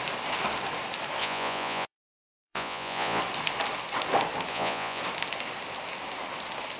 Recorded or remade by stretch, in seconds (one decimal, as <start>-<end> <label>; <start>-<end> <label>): 0.0-1.2 recorded; 1.2-3.2 remade; 3.2-4.5 recorded; 4.5-5.0 remade; 5.0-6.8 recorded